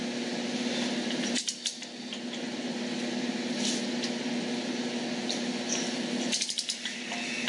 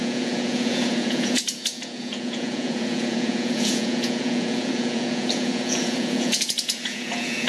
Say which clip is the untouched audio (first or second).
first